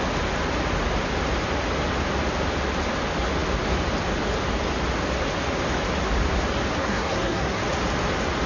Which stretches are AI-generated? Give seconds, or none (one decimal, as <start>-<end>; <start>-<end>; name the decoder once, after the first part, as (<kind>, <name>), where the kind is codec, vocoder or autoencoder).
6.8-7.6 (codec, SNAC)